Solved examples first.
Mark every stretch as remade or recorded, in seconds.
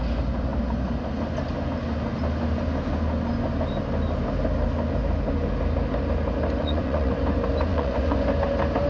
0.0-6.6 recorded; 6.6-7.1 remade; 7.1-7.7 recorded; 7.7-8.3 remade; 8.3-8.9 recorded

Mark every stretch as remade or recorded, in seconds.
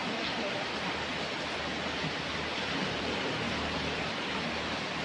0.0-5.0 recorded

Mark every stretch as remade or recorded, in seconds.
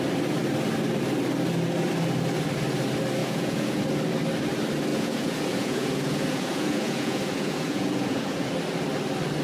0.0-3.2 recorded; 3.2-3.8 remade; 3.8-4.9 recorded; 4.9-8.5 remade; 8.5-9.4 recorded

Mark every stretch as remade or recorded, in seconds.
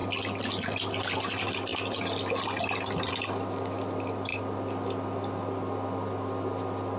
0.0-7.0 recorded